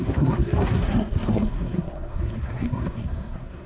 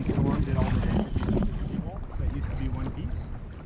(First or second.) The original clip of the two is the second